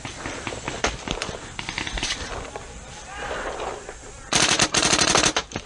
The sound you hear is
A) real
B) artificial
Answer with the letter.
B